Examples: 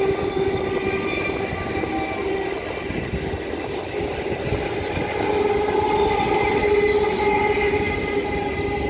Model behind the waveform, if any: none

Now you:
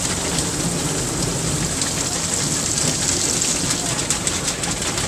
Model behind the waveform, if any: none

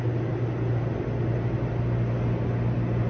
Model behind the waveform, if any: none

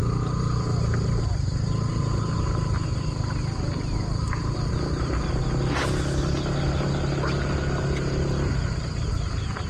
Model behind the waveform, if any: none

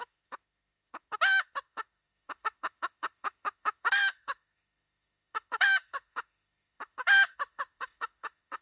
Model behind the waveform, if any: autoencoder, DAC-VAE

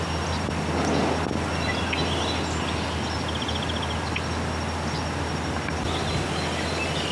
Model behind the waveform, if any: none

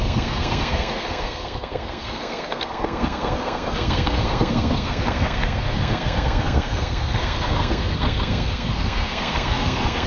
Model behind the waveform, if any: codec, SNAC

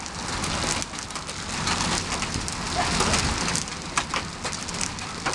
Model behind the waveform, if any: none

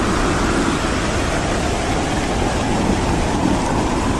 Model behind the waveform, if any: none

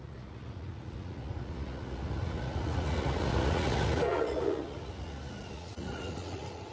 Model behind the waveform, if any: vocoder, Vocos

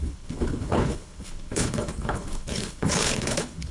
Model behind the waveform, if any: codec, HILCodec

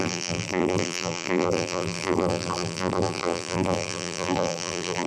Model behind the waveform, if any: vocoder, BigVGAN v2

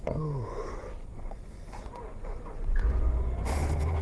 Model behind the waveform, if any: vocoder, Vocos